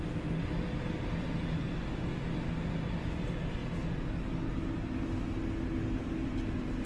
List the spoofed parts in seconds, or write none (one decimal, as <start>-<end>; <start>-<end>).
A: none